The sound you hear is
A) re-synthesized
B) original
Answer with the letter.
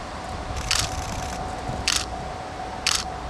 B